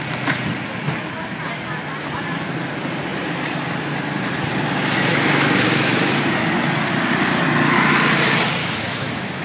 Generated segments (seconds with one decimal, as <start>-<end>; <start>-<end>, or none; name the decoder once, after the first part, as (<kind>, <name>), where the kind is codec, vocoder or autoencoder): 5.1-6.1 (autoencoder, DAC-VAE); 8.6-9.4